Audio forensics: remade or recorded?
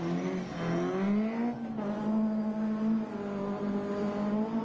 recorded